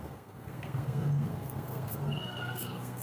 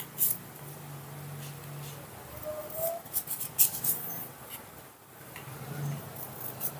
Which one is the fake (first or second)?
first